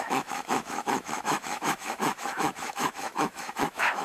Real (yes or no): no